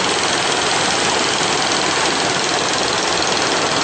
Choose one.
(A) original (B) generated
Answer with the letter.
A